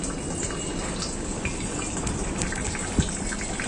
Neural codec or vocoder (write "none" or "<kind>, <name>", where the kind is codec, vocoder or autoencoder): none